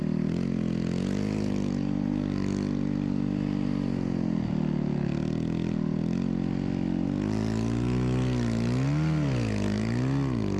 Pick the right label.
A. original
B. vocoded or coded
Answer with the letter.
A